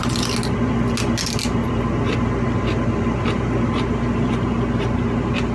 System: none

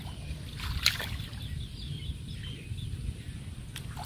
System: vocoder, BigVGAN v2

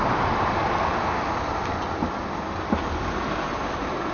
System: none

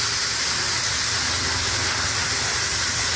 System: none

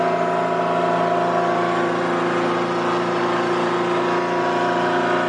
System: none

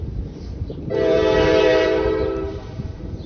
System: vocoder, BigVGAN v2